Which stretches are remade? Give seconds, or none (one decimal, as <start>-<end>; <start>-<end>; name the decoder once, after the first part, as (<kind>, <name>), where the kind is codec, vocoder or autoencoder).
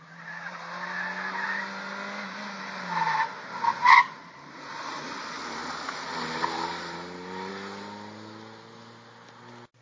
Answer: none